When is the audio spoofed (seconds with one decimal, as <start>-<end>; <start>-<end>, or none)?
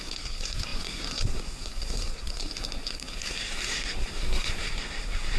0.0-5.4